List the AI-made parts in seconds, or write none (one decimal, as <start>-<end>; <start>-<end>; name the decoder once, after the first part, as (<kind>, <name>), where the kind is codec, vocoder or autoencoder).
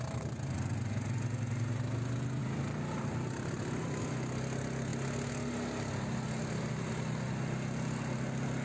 2.4-4.0 (vocoder, BigVGAN v2)